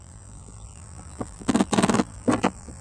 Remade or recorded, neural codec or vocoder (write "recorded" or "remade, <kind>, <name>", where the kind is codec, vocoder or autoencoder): remade, vocoder, BigVGAN v2